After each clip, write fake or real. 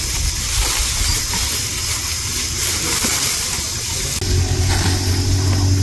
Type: real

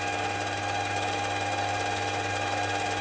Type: real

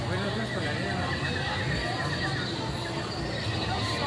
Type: real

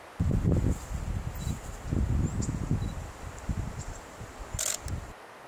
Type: real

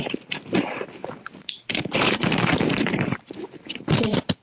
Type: fake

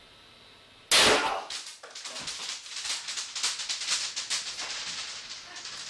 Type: real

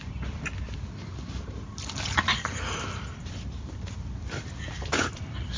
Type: fake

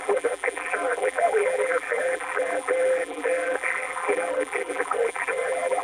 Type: fake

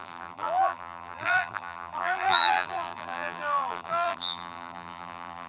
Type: fake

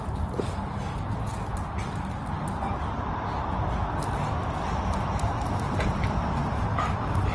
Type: real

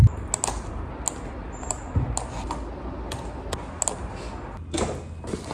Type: real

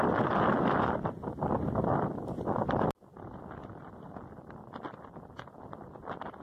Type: real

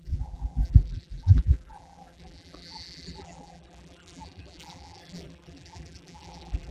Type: fake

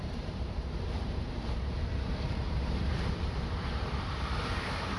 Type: fake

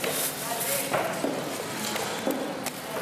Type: real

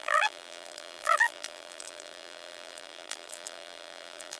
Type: fake